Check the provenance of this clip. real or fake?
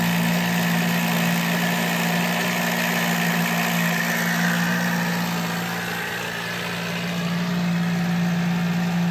real